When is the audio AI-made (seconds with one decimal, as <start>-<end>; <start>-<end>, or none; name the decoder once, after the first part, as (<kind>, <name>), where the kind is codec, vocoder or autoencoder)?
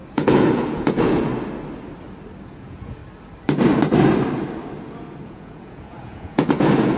0.0-1.3 (vocoder, Vocos); 2.4-3.0; 4.9-7.0